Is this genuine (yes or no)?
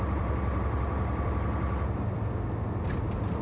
yes